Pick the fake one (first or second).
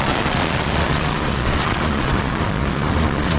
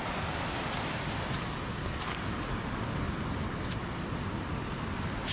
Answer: first